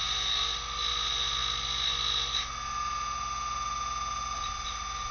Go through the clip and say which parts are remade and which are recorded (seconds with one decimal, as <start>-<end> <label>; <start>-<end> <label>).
0.0-5.1 recorded